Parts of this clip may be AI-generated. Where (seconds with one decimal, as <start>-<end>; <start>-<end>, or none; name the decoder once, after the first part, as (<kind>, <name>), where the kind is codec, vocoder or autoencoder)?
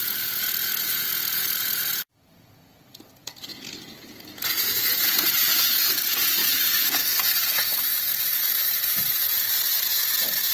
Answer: 0.0-10.5 (vocoder, Vocos)